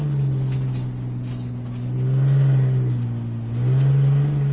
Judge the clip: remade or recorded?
recorded